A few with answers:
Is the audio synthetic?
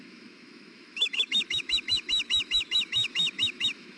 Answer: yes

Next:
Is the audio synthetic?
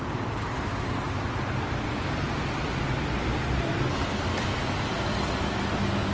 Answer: no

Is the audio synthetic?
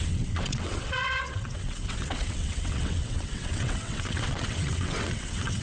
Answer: yes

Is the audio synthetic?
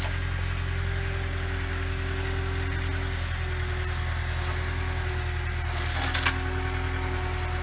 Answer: no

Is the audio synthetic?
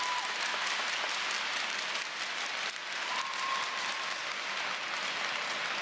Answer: no